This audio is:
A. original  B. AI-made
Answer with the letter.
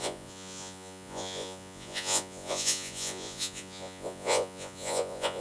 B